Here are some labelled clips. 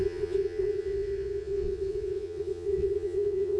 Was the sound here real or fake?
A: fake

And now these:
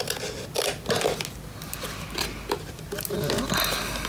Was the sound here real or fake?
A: real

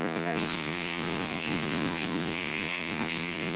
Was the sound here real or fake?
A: fake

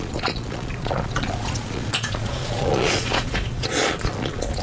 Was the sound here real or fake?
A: fake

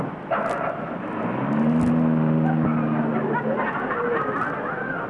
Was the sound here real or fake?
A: real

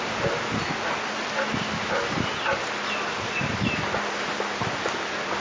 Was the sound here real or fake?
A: real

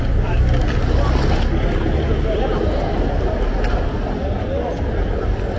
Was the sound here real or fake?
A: real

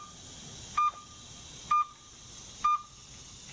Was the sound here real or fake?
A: real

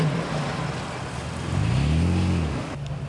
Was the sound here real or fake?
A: real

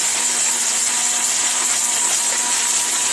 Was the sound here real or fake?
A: real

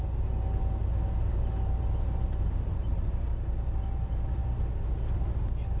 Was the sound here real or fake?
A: real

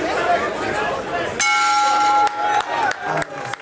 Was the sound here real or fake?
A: real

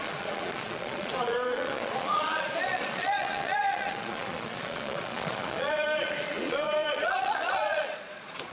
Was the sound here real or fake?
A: fake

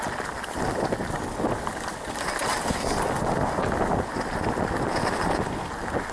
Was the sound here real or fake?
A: real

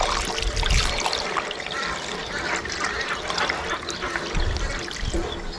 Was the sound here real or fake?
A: real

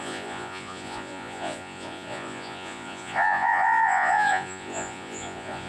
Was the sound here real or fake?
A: fake